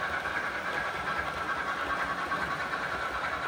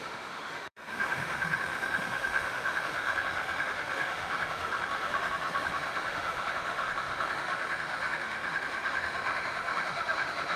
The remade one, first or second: second